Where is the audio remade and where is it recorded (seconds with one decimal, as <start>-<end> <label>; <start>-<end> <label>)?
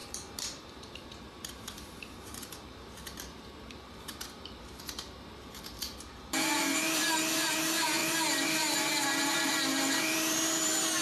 0.0-11.0 remade